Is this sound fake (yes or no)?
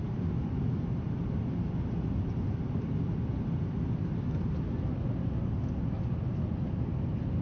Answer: no